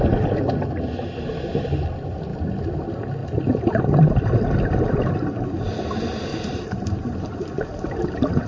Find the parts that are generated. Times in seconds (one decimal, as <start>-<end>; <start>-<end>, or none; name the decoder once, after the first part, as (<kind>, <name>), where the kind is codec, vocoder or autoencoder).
6.3-8.0 (vocoder, BigVGAN v2)